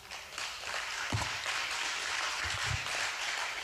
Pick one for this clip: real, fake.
fake